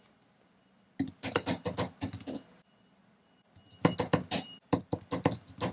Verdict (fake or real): real